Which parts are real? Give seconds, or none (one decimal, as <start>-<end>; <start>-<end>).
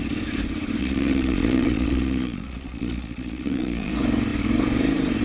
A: 0.0-0.8; 3.9-5.2